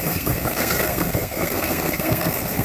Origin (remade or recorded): remade